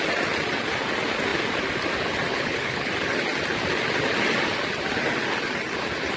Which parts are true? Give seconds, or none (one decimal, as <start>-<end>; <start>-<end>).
0.0-2.3; 2.9-6.2